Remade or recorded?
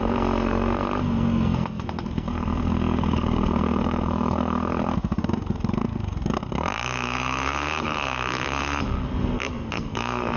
remade